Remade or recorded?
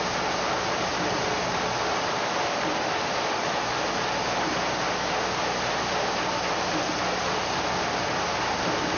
recorded